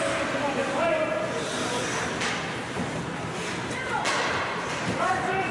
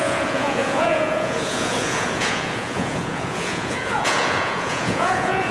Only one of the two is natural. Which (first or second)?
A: first